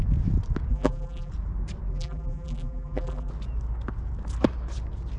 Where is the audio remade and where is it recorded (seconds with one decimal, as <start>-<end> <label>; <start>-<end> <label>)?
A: 0.0-0.7 recorded; 0.7-1.3 remade; 1.3-1.9 recorded; 1.9-3.3 remade; 3.3-5.2 recorded

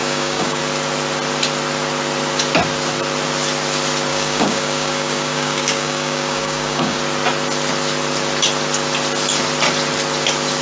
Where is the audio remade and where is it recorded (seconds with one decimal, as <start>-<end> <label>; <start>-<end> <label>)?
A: 0.0-0.6 remade; 0.6-4.1 recorded; 4.1-7.0 remade; 7.0-10.6 recorded

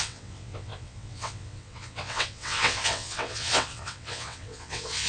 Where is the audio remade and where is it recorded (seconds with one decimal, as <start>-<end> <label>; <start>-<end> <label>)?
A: 0.0-5.1 remade

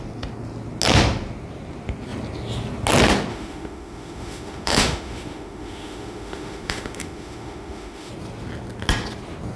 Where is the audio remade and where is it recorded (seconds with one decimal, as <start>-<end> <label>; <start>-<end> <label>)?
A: 0.0-3.3 recorded; 3.3-8.1 remade; 8.1-9.6 recorded

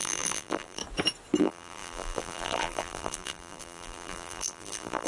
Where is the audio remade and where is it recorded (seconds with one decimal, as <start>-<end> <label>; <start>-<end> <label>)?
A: 0.0-0.8 remade; 0.8-1.4 recorded; 1.4-5.1 remade

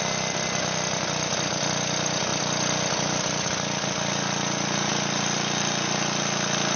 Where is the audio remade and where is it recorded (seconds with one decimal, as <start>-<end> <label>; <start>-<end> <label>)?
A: 0.0-6.8 recorded

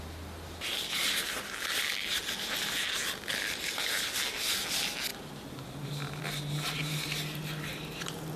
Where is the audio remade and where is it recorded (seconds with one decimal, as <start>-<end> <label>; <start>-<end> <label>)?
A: 0.0-5.1 recorded; 5.1-6.2 remade; 6.2-8.4 recorded